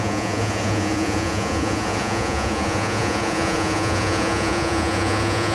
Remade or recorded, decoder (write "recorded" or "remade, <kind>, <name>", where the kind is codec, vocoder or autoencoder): remade, vocoder, Vocos